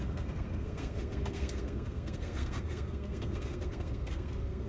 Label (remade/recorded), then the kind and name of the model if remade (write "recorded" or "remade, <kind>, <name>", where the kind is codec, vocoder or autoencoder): remade, codec, SNAC